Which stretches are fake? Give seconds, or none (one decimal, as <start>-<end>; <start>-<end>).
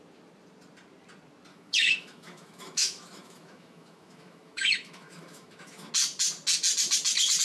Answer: 1.5-5.9